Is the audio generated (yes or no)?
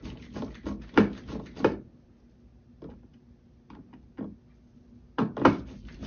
no